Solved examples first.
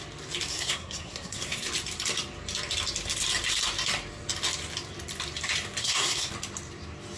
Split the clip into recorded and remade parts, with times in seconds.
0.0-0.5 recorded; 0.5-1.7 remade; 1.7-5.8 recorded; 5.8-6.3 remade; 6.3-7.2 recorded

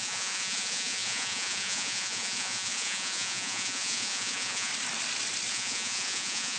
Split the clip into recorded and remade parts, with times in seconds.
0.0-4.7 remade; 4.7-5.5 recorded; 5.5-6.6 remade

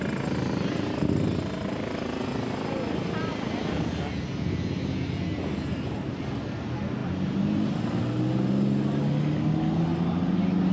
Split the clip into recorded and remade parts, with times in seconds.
0.0-10.7 recorded

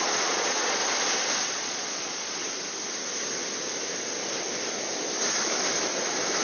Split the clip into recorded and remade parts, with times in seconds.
0.0-0.8 remade; 0.8-1.5 recorded; 1.5-2.4 remade; 2.4-6.4 recorded

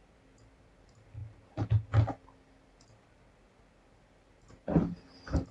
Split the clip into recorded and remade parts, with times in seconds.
0.0-5.5 recorded

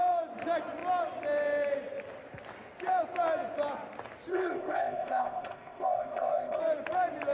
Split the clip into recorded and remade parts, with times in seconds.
0.0-4.3 recorded; 4.3-6.6 remade; 6.6-7.3 recorded